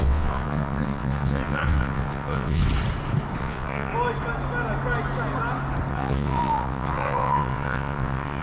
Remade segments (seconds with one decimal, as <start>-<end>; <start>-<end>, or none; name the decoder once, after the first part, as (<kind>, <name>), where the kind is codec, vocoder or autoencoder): 0.0-2.6 (vocoder, WaveNeXt); 3.4-3.9; 5.9-8.4